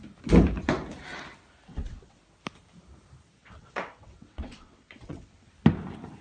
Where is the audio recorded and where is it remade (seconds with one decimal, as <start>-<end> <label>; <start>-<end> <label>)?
0.0-1.7 recorded; 1.7-2.2 remade; 2.2-3.4 recorded; 3.4-5.5 remade; 5.5-6.2 recorded